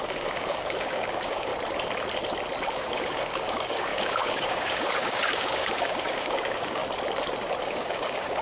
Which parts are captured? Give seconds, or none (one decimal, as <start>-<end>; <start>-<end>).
1.5-2.7; 6.8-7.6